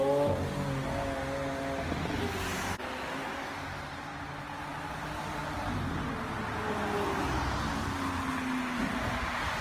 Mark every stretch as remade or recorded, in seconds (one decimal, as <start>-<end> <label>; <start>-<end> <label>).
0.0-9.6 recorded